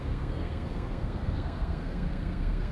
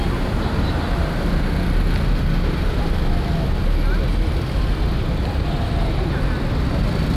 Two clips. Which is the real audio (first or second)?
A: second